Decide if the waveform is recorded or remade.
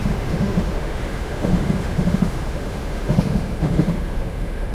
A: remade